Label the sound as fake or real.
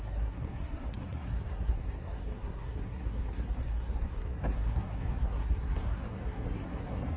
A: fake